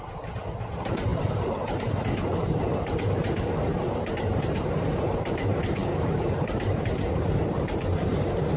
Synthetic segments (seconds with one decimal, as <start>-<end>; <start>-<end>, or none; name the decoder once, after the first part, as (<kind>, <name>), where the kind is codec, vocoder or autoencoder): 0.0-8.6 (vocoder, BigVGAN v2)